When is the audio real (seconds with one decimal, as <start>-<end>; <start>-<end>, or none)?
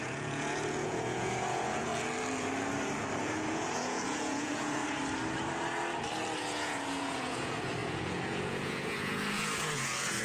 1.9-3.2; 4.8-6.4